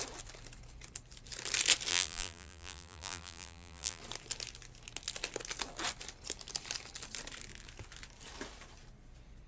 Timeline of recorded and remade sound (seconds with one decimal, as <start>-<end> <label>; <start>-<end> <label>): 0.0-1.9 recorded; 1.9-4.0 remade; 4.0-9.5 recorded